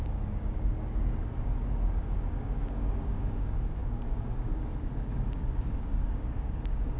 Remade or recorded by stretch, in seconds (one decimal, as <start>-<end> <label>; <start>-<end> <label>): 0.0-7.0 remade